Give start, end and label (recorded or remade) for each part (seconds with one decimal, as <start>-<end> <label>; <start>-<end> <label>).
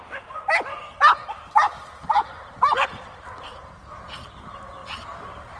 0.0-1.2 recorded; 1.2-4.0 remade; 4.0-4.8 recorded; 4.8-5.6 remade